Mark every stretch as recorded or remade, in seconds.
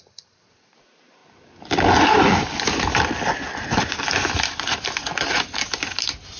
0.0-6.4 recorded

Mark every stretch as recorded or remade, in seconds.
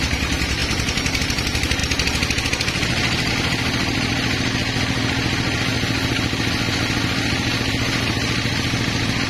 0.0-9.3 recorded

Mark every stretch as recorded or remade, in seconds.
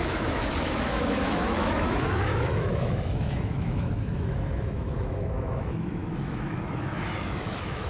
0.0-7.9 remade